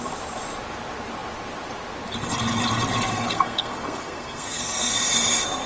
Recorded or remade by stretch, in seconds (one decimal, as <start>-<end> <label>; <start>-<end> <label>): 0.0-3.1 recorded; 3.1-4.9 remade; 4.9-5.7 recorded